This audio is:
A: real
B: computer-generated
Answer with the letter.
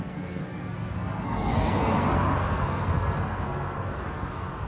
B